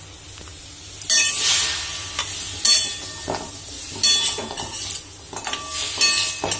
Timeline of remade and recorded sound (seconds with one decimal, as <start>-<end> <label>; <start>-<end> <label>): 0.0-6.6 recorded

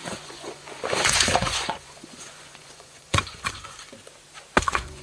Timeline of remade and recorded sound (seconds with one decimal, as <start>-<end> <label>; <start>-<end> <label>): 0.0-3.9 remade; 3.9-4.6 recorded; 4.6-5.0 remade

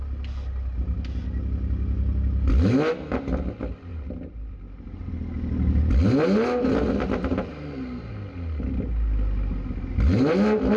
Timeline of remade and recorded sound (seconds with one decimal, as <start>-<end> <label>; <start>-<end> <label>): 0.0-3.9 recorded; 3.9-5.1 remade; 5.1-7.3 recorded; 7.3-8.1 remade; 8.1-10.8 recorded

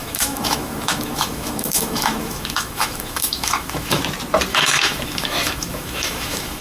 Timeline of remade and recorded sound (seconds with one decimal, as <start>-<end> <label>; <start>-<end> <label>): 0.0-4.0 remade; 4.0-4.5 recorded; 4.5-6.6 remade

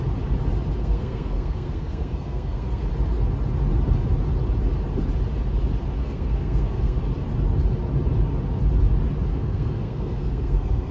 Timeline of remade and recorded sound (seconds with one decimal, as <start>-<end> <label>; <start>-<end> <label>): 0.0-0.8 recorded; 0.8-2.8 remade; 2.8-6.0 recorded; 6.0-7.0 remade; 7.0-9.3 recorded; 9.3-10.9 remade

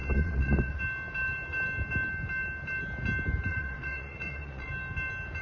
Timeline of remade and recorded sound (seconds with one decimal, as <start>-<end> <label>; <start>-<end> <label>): 0.0-0.8 remade; 0.8-3.5 recorded; 3.5-4.7 remade; 4.7-5.4 recorded

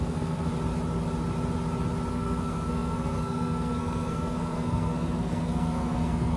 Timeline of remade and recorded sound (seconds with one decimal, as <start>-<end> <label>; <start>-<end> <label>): 0.0-0.5 remade; 0.5-2.1 recorded; 2.1-6.4 remade